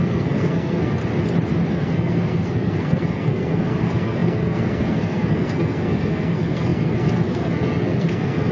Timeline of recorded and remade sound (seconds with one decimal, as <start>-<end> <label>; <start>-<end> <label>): 0.0-1.0 remade; 1.0-1.7 recorded; 1.7-8.5 remade